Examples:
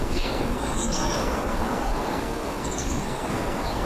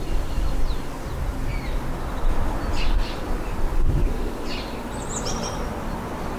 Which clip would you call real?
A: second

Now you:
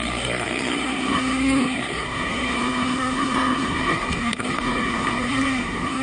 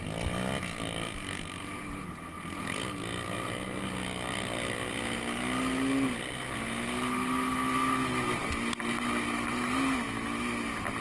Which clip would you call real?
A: second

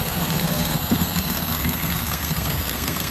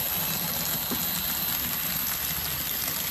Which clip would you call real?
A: second